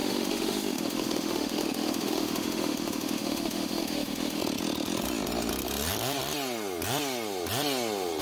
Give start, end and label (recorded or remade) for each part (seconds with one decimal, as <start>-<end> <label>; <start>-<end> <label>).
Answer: 0.0-4.4 remade; 4.4-8.2 recorded